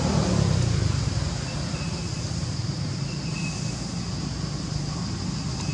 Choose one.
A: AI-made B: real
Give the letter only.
B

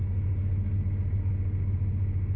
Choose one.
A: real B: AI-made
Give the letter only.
A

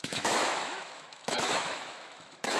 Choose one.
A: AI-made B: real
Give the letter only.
A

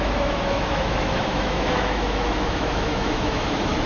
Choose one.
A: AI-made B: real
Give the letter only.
A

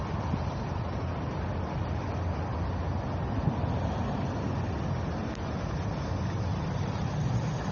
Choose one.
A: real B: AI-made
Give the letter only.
A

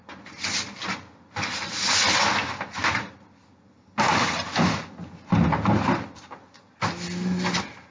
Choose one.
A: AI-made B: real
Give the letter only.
B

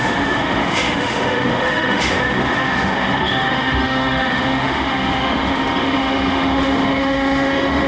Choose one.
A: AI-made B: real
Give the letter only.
A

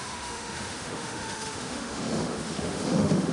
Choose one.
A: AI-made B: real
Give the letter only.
A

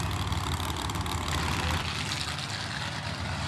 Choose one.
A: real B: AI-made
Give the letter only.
A